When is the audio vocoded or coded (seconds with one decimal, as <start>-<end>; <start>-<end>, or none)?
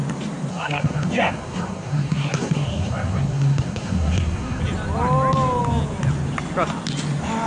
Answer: 0.5-4.6